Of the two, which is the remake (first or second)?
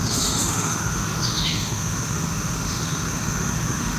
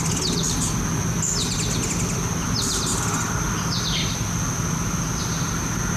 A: first